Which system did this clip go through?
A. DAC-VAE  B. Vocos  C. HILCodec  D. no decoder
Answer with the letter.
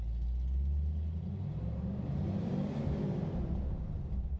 D